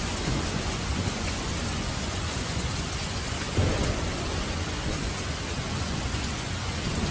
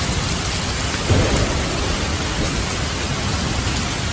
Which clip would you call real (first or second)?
second